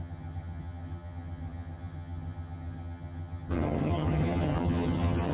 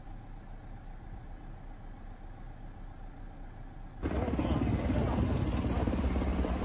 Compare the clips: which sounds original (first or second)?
second